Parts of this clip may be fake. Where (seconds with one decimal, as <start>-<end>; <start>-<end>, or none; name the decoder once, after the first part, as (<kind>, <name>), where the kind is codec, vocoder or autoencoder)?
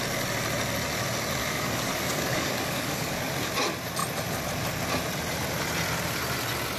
1.4-3.3 (codec, DAC)